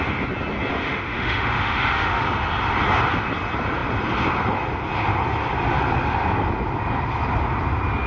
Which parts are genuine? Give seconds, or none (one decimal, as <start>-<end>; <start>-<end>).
0.0-0.7; 2.2-8.1